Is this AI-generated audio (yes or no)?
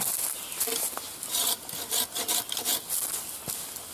no